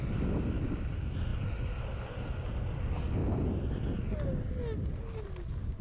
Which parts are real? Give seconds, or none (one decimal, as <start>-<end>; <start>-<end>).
0.0-5.8